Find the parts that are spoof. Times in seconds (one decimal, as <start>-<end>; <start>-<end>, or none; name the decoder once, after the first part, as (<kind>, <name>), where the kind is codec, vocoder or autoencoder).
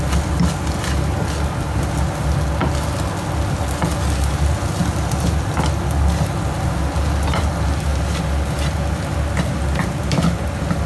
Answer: none